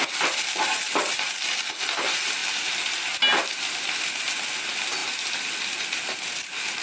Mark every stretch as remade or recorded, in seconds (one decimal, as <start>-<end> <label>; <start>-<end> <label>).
0.0-6.8 recorded